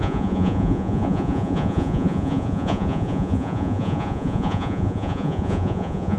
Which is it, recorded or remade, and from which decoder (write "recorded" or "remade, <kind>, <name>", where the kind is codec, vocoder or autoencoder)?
remade, vocoder, Vocos